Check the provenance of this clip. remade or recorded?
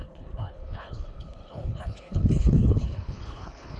remade